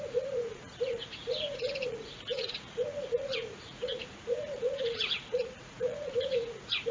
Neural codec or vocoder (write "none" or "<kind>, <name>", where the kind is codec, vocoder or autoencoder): vocoder, Vocos